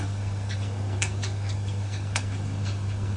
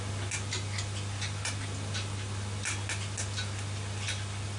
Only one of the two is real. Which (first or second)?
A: second